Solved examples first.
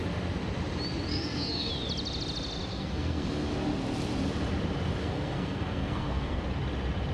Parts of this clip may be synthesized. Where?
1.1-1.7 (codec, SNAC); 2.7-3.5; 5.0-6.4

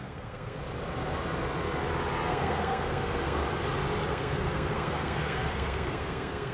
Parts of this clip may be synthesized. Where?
0.0-0.6 (codec, SNAC); 2.3-3.4; 4.1-6.5

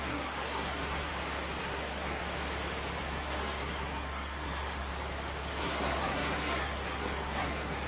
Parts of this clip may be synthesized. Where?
0.0-1.1 (codec, SNAC); 1.6-2.2; 3.0-4.9; 5.6-7.9

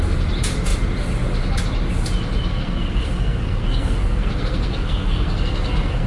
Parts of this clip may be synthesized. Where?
2.5-6.1 (codec, SNAC)